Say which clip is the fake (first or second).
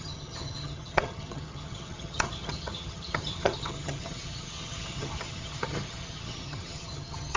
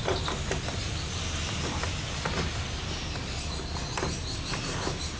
first